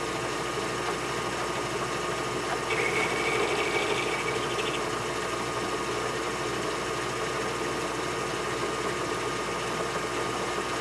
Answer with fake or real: real